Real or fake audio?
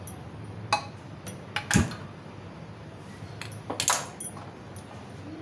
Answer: real